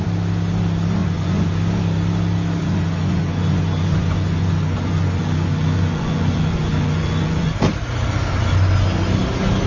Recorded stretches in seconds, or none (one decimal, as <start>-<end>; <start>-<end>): 0.0-1.0; 1.5-2.6; 7.5-9.7